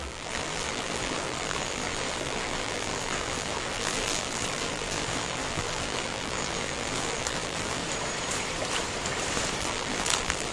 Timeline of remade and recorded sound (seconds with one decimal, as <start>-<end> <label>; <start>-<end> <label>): 0.0-7.8 remade; 7.8-9.6 recorded; 9.6-10.5 remade